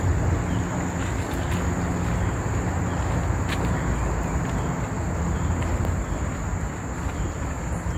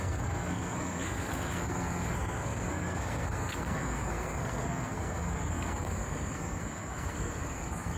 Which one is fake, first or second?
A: second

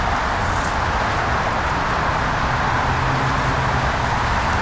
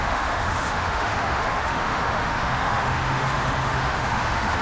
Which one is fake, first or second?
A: second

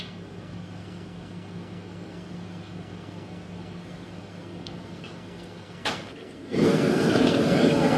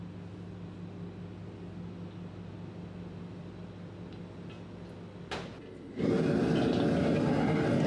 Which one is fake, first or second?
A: first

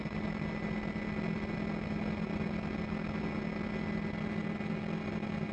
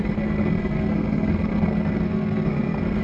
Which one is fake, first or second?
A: second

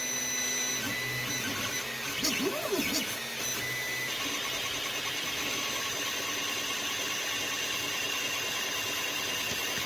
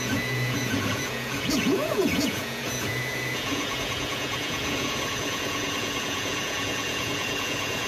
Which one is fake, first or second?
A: second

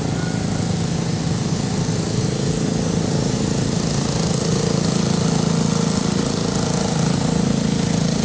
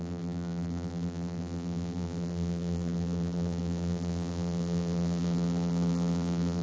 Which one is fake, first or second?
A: second